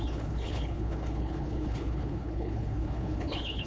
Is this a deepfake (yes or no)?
yes